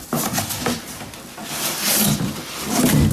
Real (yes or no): yes